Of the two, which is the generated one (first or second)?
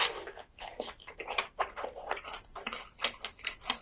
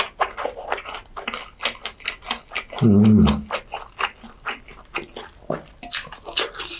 first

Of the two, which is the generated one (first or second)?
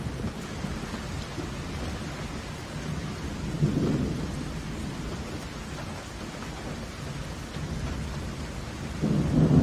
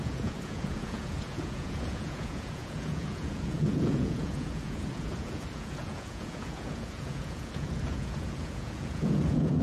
second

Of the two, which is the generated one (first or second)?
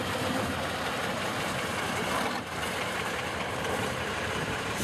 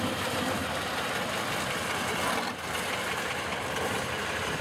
first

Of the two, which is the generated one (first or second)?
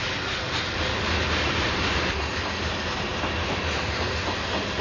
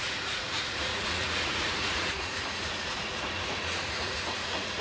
second